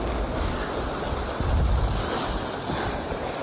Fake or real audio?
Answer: real